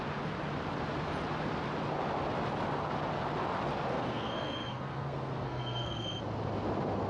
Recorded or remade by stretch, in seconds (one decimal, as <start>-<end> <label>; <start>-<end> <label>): 0.0-3.9 recorded; 3.9-6.2 remade; 6.2-7.1 recorded